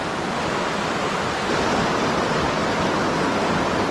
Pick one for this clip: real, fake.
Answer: real